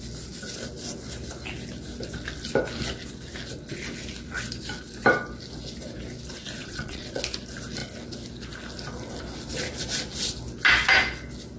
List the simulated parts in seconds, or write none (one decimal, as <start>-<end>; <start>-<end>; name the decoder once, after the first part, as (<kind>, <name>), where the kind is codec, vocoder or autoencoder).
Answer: 6.6-7.2 (vocoder, Vocos)